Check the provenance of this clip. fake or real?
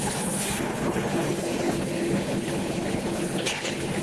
fake